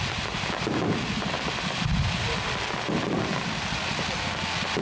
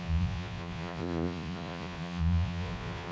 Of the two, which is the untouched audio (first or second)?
first